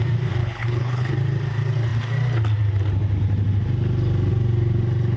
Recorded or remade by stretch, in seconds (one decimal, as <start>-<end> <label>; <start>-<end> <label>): 0.0-0.4 recorded; 0.4-1.1 remade; 1.1-5.2 recorded